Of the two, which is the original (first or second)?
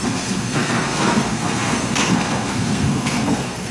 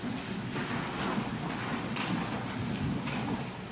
second